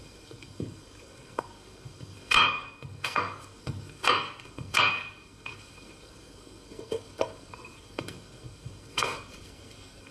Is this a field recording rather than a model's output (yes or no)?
no